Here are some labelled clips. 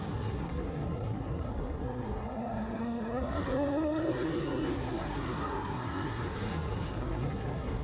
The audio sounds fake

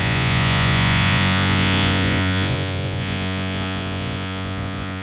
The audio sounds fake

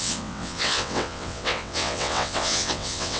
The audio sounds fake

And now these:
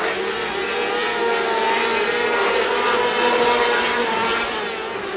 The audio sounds real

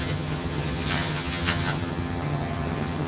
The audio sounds fake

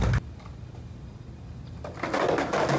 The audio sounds real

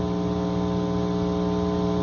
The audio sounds real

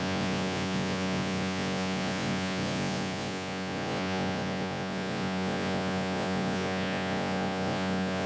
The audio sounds fake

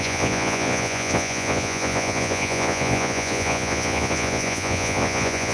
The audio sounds fake